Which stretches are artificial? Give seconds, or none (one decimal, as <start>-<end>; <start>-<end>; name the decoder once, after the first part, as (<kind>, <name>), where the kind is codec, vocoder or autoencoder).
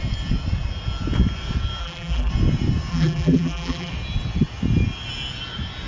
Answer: 1.8-2.3 (vocoder, BigVGAN v2); 2.9-3.9